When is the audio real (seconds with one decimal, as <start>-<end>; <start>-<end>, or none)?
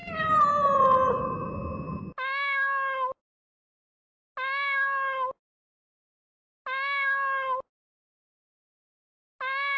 0.0-9.8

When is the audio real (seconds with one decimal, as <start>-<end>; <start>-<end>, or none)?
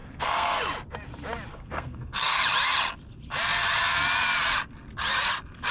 0.6-1.5; 2.4-5.7